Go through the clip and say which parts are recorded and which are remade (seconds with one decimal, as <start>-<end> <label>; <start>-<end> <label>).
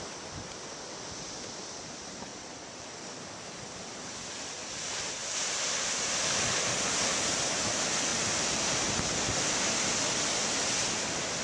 0.0-2.3 recorded; 2.3-3.2 remade; 3.2-5.2 recorded; 5.2-6.8 remade; 6.8-8.1 recorded; 8.1-8.9 remade; 8.9-11.4 recorded